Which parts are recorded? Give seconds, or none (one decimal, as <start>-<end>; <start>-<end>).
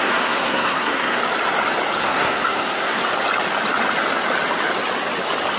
1.2-2.0; 3.0-5.6